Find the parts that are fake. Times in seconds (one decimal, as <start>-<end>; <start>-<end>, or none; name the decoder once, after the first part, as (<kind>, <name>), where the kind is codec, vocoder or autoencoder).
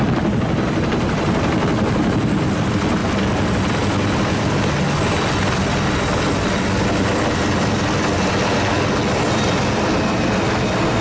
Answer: none